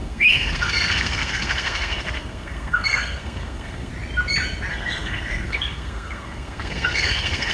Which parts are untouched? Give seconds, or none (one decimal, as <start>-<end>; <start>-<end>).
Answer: 3.9-4.7